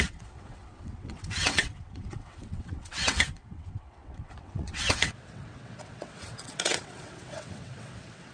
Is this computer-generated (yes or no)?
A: yes